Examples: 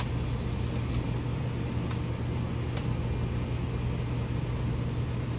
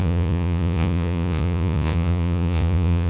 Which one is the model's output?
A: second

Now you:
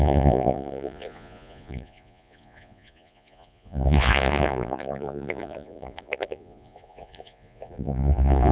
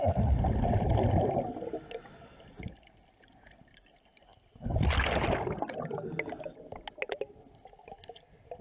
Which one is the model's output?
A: first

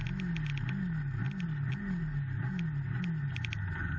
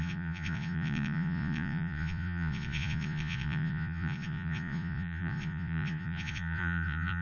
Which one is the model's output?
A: second